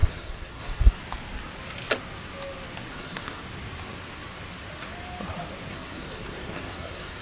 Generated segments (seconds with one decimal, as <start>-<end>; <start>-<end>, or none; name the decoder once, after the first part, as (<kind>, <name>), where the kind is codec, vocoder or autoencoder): 0.0-1.0 (codec, SNAC); 2.9-3.4; 5.7-7.2